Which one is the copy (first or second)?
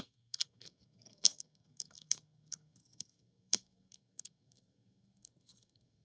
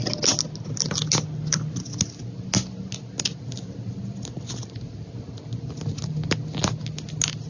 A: first